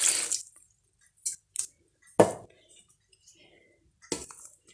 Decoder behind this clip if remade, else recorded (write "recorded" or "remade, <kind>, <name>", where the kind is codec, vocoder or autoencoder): recorded